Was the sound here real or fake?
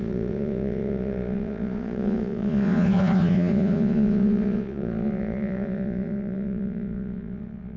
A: fake